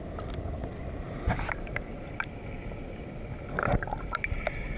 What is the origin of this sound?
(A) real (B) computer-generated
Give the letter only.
A